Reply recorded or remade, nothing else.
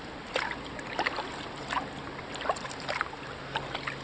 recorded